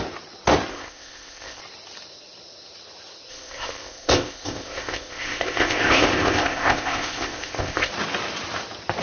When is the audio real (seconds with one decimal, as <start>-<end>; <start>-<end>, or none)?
0.0-0.7; 1.6-3.3; 7.9-9.0